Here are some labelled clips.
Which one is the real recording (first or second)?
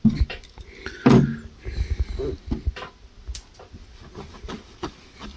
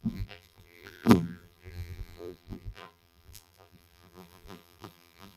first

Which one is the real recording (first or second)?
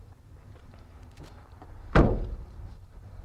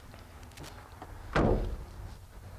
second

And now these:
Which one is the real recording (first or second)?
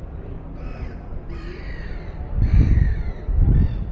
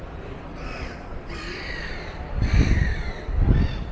first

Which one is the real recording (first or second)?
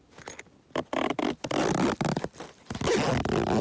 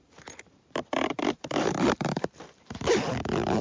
first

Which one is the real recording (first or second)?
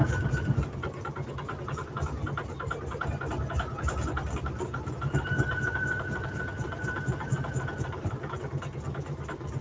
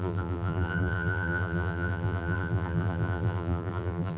first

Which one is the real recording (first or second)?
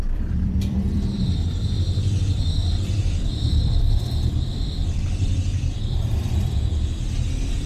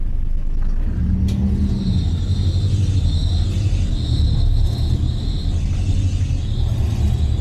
second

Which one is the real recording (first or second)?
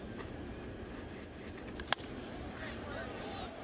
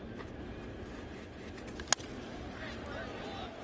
second